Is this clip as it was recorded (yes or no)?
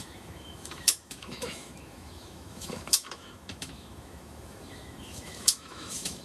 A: no